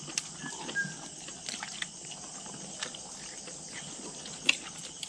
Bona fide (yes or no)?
yes